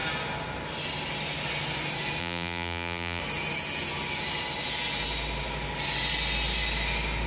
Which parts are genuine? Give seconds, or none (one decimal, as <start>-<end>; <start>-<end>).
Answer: 0.0-2.2; 3.2-7.3